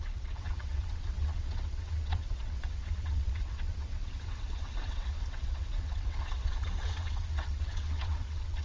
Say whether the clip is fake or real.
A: fake